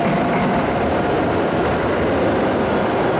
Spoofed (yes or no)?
no